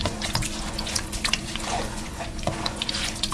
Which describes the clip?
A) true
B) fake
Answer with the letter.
B